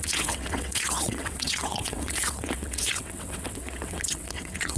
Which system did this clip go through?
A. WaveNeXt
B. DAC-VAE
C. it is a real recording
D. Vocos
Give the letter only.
A